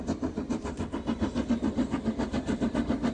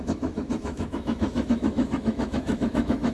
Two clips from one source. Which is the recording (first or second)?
first